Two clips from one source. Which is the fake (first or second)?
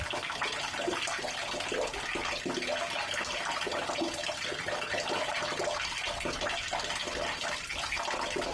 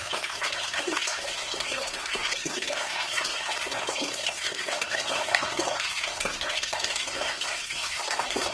second